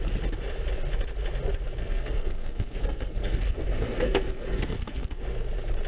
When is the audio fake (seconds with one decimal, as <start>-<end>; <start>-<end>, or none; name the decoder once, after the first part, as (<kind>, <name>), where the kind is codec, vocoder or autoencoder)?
1.8-5.2 (codec, SNAC)